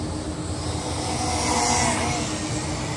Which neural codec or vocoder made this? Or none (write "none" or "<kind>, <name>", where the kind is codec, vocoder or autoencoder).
none